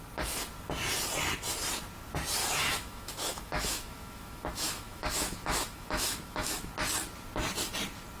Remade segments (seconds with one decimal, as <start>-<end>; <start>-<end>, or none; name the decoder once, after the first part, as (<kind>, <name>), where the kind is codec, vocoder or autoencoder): 2.4-6.7 (autoencoder, DAC-VAE)